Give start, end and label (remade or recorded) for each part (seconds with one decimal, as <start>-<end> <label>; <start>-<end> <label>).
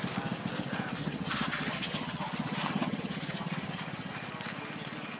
0.0-1.0 recorded; 1.0-4.1 remade; 4.1-5.2 recorded